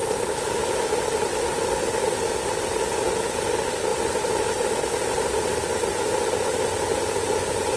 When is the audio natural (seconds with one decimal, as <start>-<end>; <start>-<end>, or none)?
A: 0.0-7.8